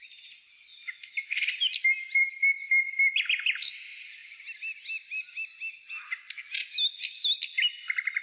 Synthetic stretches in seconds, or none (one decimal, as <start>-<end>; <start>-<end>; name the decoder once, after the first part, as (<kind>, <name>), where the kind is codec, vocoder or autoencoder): none